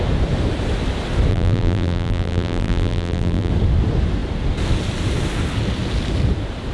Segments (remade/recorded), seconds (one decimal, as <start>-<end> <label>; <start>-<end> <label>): 0.0-1.3 recorded; 1.3-3.5 remade; 3.5-6.7 recorded